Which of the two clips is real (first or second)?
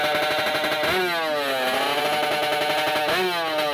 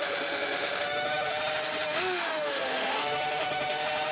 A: first